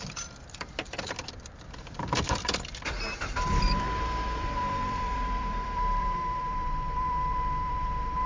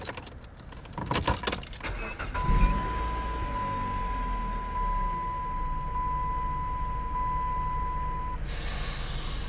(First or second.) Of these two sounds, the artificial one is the first